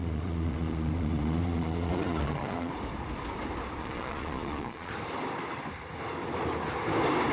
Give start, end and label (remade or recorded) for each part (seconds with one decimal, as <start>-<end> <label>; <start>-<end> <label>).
0.0-2.7 remade; 2.7-3.8 recorded; 3.8-4.9 remade; 4.9-7.3 recorded